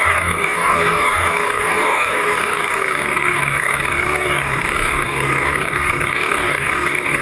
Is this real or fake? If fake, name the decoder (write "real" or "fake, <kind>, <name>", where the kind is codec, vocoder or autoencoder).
fake, codec, DAC